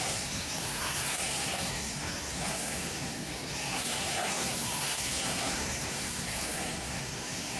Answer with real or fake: fake